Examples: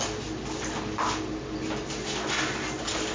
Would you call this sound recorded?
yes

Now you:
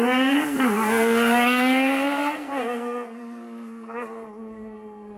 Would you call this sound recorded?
no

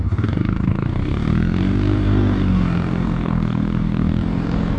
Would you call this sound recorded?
no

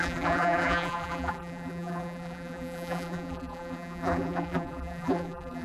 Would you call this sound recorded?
no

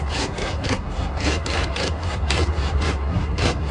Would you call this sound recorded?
no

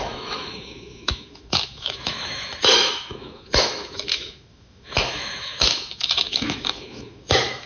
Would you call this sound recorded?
no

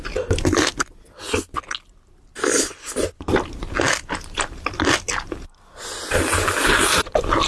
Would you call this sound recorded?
yes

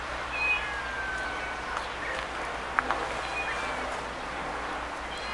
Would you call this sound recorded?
yes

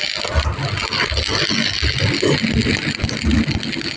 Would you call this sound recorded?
yes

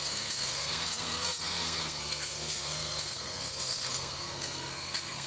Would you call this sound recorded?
no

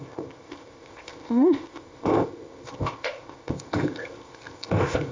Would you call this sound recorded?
no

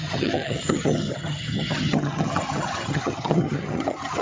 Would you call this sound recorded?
no